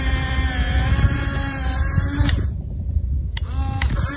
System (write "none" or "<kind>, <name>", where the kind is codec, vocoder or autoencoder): none